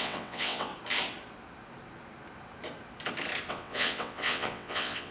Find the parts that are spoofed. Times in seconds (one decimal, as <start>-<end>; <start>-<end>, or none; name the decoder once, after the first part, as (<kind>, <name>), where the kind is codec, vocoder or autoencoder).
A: 0.0-0.7 (vocoder, WaveNeXt); 3.5-5.1